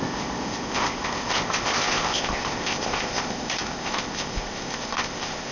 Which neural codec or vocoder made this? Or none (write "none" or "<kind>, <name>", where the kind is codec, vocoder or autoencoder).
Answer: codec, ZipCodec